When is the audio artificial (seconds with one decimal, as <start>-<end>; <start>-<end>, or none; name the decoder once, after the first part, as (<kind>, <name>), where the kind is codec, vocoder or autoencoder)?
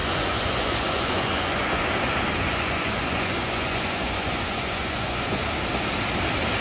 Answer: 0.0-1.8 (vocoder, Vocos); 2.4-5.4